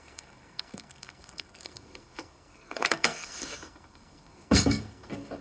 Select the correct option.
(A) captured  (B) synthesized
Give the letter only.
B